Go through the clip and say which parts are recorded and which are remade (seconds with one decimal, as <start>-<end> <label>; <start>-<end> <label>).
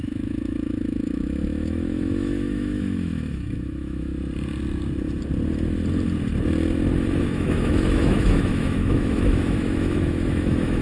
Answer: 0.0-4.1 remade; 4.1-7.2 recorded; 7.2-10.8 remade